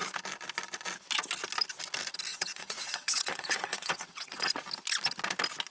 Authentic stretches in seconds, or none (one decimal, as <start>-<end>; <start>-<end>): 0.0-2.3; 4.5-5.7